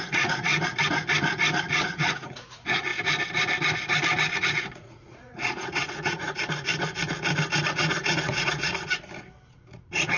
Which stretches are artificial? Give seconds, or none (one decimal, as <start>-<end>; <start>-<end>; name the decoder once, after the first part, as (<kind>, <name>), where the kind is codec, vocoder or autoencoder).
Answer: 0.0-0.5 (vocoder, Vocos); 1.8-2.9; 4.3-6.7; 7.7-8.7; 9.5-10.2

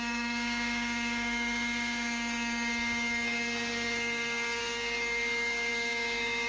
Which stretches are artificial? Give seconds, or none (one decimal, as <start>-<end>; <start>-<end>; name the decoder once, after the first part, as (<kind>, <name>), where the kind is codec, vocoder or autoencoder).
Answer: 0.0-6.5 (codec, DAC)

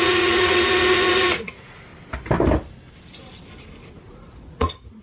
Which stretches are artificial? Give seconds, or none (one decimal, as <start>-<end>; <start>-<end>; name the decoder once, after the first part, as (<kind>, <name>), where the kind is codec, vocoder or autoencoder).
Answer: 0.0-1.9 (vocoder, Vocos); 3.9-5.0

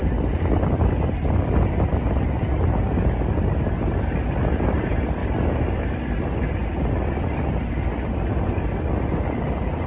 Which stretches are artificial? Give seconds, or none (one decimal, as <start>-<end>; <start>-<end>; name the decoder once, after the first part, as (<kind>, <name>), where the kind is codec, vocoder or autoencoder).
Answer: none

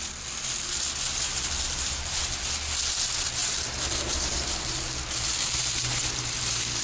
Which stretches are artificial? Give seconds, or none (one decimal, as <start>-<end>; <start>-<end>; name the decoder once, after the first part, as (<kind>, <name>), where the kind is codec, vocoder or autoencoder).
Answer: 1.3-2.2 (vocoder, BigVGAN v2); 3.4-6.8

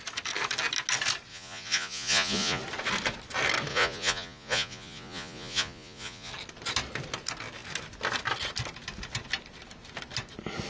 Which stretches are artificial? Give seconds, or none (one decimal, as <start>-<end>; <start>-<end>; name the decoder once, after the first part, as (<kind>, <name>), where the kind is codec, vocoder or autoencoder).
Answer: 1.3-2.6 (vocoder, Vocos); 3.7-6.3

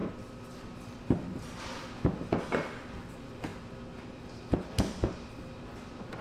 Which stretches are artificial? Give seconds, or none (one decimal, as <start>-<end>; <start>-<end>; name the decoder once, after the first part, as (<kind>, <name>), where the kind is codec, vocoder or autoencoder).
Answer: none

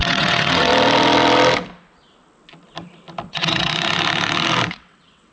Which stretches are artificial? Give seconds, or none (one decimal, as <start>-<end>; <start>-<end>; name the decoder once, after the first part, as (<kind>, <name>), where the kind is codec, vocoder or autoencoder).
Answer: 0.0-0.7 (vocoder, WaveNeXt); 3.3-3.7; 4.7-5.3